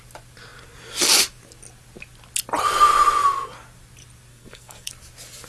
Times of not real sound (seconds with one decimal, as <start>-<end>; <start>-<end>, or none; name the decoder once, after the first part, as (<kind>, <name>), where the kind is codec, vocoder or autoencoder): 4.3-4.9 (codec, SNAC)